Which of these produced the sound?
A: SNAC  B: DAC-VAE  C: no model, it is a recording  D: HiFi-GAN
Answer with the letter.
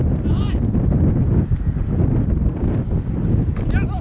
C